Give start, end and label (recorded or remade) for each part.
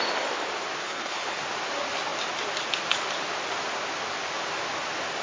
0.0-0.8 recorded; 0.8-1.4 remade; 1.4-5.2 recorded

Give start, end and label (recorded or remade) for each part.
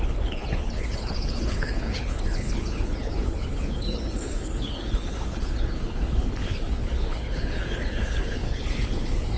0.0-9.4 remade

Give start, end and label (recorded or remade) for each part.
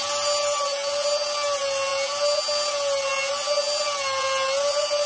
0.0-5.1 recorded